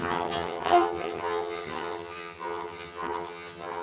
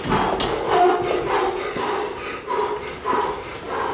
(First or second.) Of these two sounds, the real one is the second